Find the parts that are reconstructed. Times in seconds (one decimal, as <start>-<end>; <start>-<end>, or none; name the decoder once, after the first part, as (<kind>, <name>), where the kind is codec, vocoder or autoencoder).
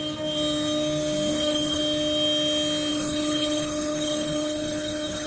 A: 1.3-1.8 (codec, HILCodec); 2.9-5.3